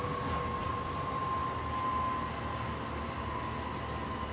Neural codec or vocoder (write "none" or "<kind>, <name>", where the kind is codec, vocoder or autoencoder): none